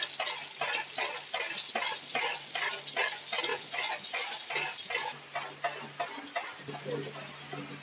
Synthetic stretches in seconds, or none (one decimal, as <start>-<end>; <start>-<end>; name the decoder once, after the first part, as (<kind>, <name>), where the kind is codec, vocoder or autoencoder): 2.1-2.7 (vocoder, Vocos); 3.5-4.5